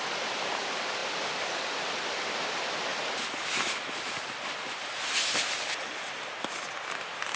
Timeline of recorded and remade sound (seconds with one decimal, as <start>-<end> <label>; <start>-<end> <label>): 0.0-7.4 recorded